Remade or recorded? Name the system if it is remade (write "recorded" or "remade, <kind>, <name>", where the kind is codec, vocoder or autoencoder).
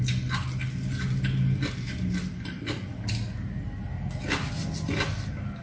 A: recorded